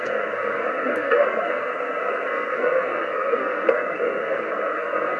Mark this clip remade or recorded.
remade